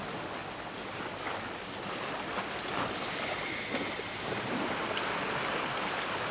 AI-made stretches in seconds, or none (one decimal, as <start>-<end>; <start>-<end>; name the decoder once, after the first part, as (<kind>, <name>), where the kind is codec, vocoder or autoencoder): none